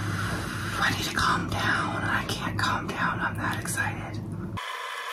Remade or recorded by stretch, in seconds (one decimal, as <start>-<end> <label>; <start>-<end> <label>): 0.0-5.1 recorded